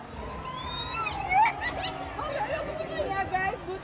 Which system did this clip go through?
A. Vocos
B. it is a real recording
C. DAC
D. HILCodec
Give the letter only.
B